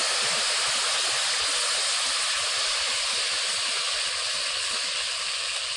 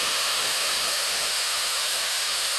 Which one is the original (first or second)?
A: first